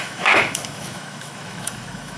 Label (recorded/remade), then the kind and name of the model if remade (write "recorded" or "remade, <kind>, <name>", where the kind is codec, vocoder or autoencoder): remade, autoencoder, DAC-VAE